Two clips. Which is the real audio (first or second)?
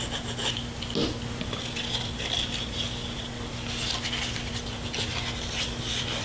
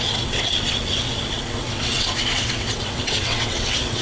first